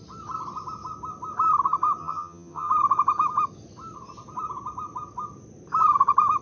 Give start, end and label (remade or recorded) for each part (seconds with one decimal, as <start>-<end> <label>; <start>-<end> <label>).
0.0-2.0 recorded; 2.0-2.7 remade; 2.7-6.4 recorded